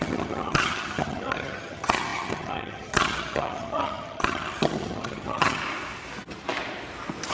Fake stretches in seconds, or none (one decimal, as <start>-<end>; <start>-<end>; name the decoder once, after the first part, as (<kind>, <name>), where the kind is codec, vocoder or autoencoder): 0.0-5.6 (vocoder, HiFi-GAN)